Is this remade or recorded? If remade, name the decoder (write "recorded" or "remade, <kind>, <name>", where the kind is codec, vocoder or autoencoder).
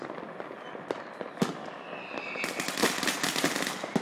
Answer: recorded